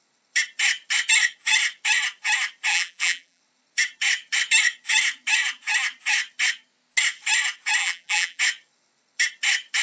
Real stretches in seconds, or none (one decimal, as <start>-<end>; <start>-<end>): 0.0-2.7; 3.4-7.8; 8.4-9.8